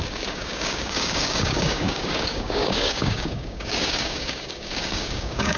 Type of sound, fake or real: fake